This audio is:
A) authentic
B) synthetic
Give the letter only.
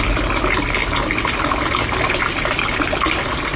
A